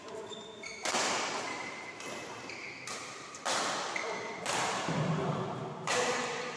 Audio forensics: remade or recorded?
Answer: recorded